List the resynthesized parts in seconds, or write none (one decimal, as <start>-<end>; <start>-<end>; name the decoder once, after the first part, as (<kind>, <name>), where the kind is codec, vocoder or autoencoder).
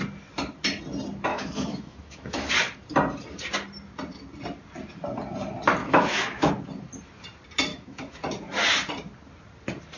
1.3-2.5 (autoencoder, DAC-VAE); 5.8-6.5; 7.7-8.2